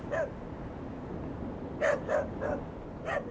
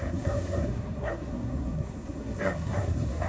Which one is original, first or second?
first